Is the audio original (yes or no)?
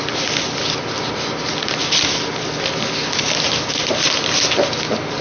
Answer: yes